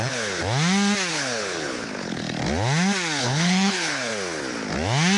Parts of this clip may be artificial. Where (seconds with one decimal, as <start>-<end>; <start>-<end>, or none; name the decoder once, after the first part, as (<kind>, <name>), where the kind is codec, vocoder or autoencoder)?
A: 0.0-0.4 (codec, HILCodec); 1.1-2.2; 3.2-4.1